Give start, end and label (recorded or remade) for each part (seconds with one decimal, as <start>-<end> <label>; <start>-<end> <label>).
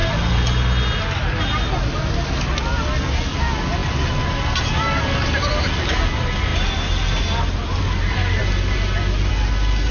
0.0-9.9 recorded